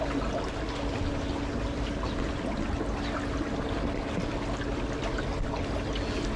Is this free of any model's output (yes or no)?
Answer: yes